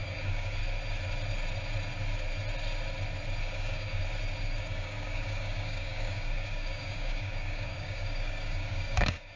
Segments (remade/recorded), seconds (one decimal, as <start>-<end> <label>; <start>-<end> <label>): 0.0-0.6 remade; 0.6-3.4 recorded; 3.4-4.0 remade; 4.0-4.6 recorded; 4.6-9.4 remade